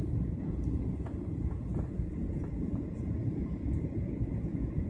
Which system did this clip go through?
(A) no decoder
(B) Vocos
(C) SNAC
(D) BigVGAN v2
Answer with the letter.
B